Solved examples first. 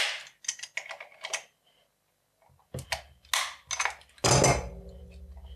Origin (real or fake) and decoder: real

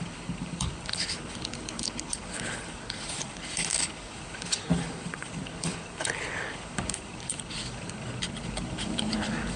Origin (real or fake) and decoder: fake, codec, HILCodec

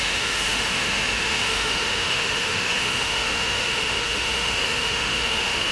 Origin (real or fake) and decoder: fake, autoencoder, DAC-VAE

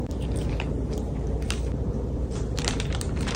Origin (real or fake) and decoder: fake, vocoder, BigVGAN v2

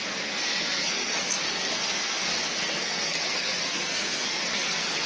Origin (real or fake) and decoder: fake, codec, SNAC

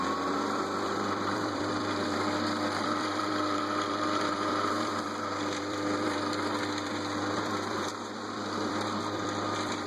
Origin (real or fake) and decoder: fake, vocoder, BigVGAN v2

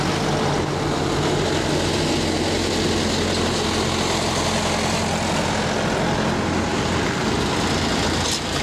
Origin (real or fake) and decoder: real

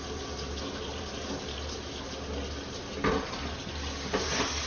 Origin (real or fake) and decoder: real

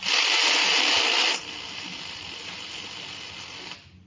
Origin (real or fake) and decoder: real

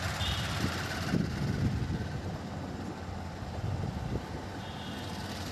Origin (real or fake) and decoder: real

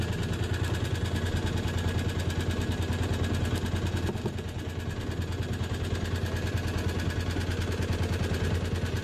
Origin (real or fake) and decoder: real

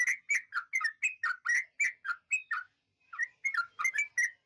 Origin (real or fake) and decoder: real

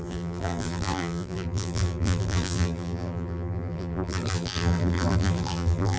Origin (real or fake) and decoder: fake, vocoder, BigVGAN v2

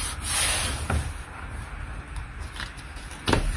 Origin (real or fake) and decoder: real